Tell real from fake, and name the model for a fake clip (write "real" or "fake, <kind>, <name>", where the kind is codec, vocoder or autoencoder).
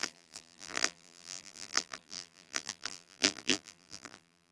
fake, vocoder, BigVGAN v2